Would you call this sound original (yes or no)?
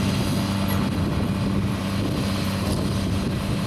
yes